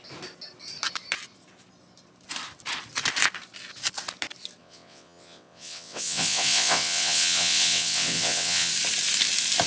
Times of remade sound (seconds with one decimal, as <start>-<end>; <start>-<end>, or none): 4.6-8.7